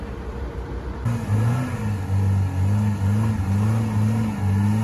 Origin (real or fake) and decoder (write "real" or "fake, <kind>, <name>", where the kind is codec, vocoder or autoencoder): real